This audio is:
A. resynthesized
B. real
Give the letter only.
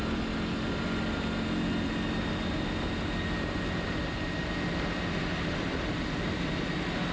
B